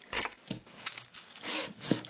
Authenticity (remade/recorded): remade